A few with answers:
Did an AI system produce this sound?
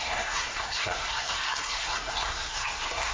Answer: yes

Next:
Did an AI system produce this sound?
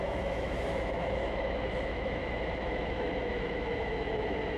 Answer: yes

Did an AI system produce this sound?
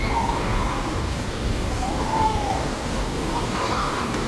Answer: yes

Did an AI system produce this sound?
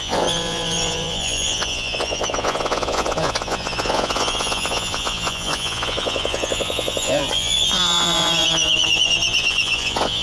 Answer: yes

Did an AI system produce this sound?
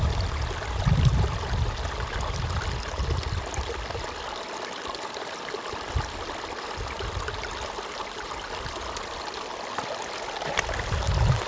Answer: no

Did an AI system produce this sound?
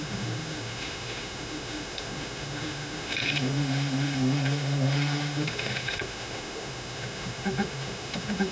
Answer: yes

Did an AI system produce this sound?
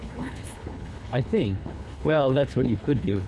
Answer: yes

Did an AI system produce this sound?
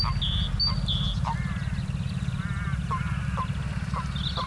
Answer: no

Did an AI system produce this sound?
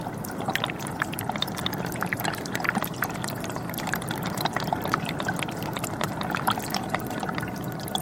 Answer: no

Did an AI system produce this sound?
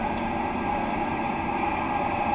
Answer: no